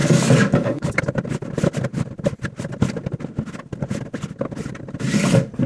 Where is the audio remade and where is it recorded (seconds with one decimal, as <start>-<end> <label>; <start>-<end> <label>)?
0.0-1.0 remade; 1.0-5.7 recorded